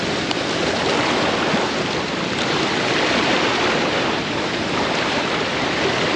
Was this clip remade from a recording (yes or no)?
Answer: yes